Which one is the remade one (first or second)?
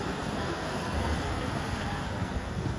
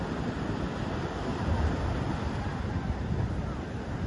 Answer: first